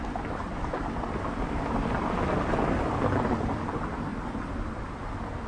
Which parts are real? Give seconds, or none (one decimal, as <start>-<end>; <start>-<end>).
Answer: 0.0-3.3